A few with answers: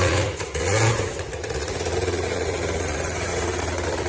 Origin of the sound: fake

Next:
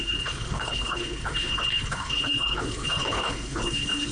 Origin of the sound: fake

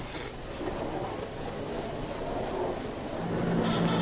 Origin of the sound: real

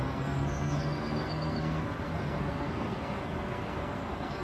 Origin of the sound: fake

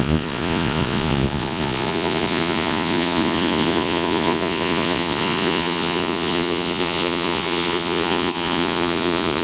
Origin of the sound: fake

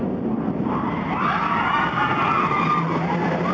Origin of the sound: real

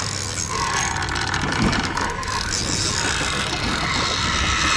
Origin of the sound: real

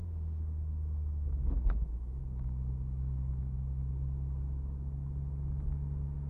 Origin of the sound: real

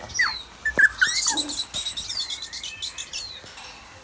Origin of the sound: real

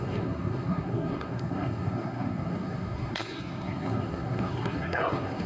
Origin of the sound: fake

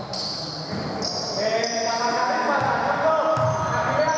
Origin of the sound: real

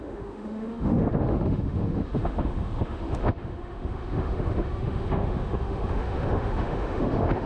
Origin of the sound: fake